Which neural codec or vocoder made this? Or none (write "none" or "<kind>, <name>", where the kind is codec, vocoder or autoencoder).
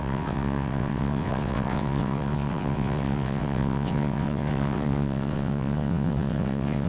vocoder, WaveNeXt